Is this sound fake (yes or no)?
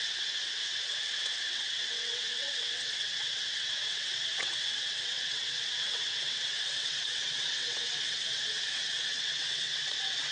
yes